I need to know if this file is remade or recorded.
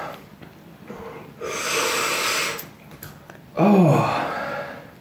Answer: recorded